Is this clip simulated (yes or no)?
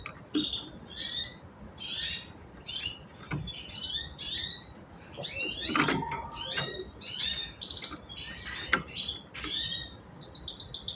no